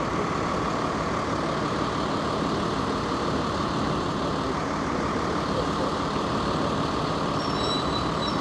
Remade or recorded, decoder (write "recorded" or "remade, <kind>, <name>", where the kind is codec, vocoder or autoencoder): recorded